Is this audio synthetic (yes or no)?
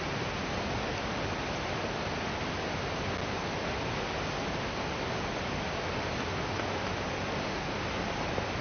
no